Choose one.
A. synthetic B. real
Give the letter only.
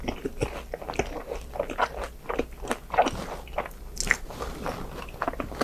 B